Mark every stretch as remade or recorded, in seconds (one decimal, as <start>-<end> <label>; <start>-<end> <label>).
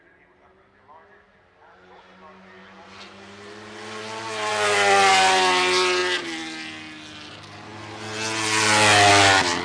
0.0-9.6 recorded